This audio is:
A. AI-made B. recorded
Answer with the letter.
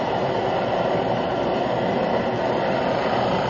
A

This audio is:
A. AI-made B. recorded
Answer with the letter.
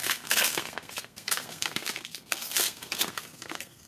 A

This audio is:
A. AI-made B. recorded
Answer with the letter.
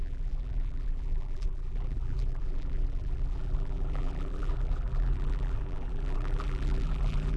A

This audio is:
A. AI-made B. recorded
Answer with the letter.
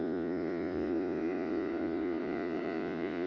A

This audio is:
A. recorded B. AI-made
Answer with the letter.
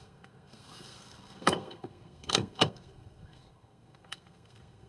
B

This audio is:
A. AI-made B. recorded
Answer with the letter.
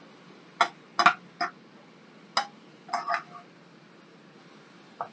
B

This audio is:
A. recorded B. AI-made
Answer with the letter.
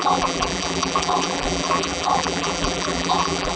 B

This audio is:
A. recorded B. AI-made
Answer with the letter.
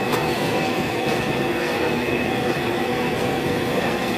B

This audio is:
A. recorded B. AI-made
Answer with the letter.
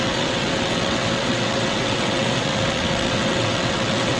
B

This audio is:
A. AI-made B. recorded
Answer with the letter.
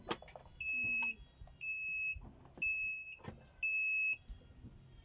B